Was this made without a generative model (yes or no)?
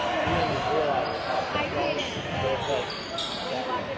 yes